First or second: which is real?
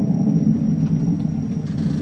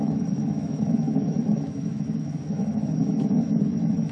first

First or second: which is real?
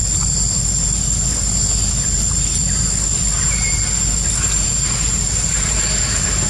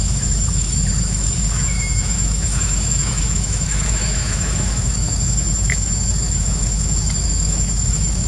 first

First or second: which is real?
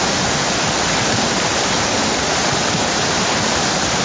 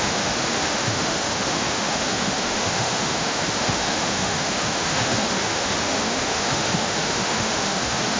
first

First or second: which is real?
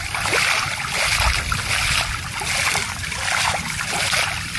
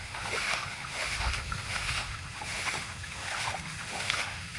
first